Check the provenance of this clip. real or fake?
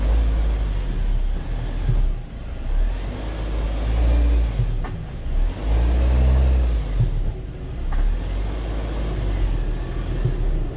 real